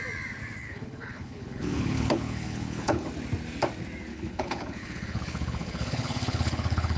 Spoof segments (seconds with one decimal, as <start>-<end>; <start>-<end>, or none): 0.6-3.1; 4.1-7.0